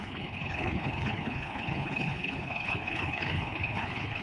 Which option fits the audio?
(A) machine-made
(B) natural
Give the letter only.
A